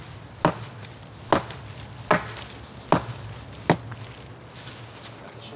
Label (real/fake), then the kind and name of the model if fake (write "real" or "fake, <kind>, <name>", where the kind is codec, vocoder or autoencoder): real